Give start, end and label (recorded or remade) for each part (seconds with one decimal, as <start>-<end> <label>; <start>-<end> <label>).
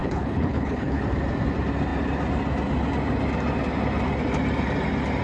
0.0-1.0 remade; 1.0-5.2 recorded